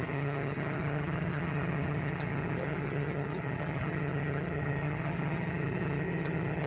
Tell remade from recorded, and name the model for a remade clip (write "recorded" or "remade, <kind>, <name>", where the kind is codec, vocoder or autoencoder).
remade, vocoder, HiFi-GAN